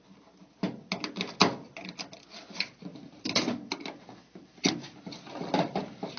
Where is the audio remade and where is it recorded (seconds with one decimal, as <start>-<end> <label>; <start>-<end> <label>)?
0.0-6.2 recorded